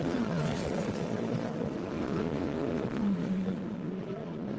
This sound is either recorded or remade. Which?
remade